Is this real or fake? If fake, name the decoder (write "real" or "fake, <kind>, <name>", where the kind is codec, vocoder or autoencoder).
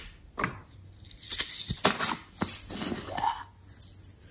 real